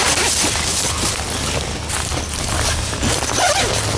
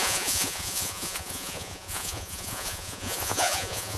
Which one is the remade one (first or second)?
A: second